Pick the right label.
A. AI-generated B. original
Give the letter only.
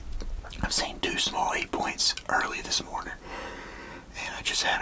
B